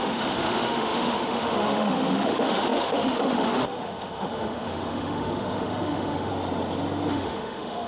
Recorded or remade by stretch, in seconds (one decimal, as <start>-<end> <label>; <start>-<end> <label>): 0.0-6.3 remade; 6.3-7.1 recorded; 7.1-7.9 remade